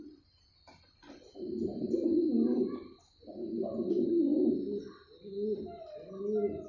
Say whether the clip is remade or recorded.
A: recorded